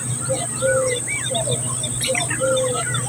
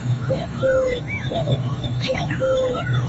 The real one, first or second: first